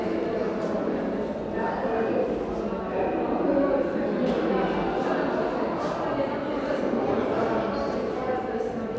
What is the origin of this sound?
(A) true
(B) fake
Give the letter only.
A